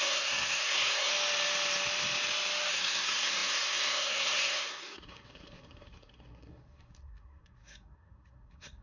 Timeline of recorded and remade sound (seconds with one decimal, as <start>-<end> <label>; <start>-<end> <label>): 0.0-1.1 remade; 1.1-2.7 recorded; 2.7-8.8 remade